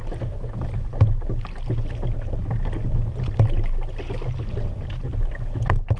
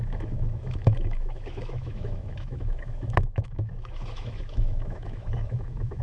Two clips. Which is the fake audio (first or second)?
second